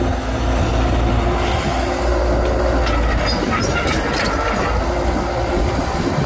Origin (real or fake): real